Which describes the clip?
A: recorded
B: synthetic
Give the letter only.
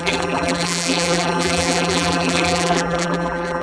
B